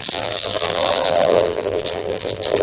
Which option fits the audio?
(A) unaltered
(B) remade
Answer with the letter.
B